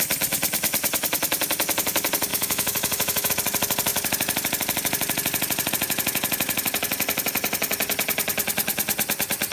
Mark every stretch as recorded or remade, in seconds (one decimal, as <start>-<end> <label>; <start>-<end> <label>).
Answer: 0.0-2.3 recorded; 2.3-3.3 remade; 3.3-9.5 recorded